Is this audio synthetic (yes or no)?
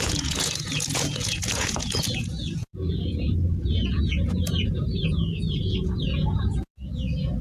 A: yes